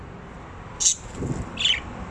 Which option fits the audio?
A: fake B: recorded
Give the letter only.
B